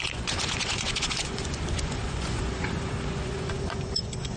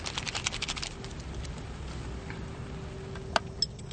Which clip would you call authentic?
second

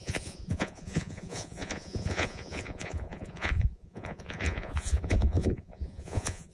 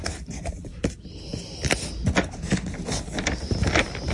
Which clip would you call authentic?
second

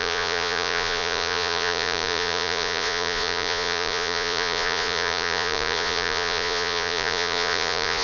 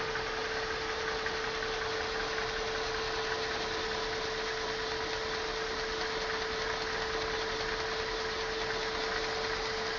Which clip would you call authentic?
second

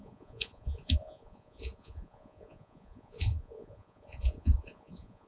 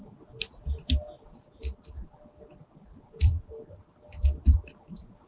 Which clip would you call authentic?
second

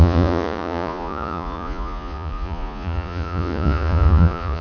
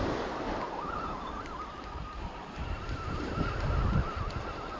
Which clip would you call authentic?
second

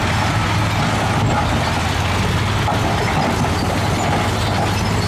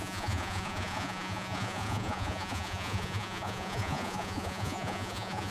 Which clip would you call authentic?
first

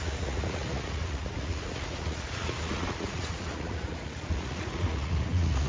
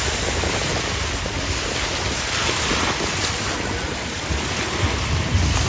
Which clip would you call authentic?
second